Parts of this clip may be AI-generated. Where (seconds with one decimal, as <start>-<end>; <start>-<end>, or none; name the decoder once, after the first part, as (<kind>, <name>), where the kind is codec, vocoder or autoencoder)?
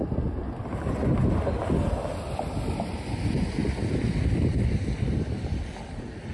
3.6-5.6 (vocoder, BigVGAN v2)